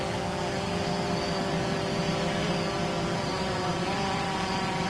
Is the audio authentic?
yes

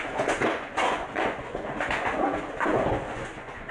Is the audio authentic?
no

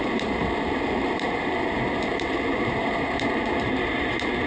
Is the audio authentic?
no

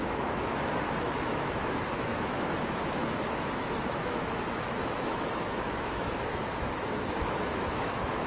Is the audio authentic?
no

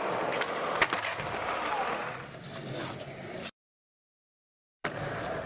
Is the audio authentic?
no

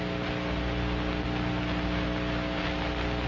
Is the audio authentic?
yes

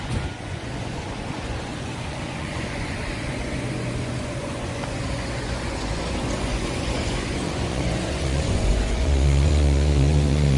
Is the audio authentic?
no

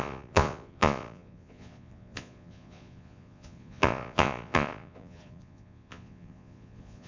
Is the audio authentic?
no